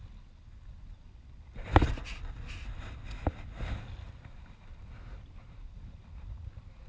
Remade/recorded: recorded